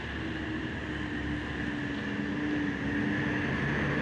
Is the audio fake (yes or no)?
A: no